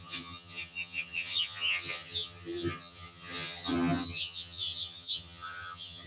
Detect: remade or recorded remade